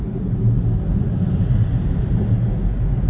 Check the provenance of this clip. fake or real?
real